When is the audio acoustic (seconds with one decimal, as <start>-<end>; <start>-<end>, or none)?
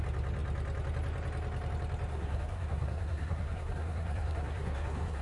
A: 0.0-2.1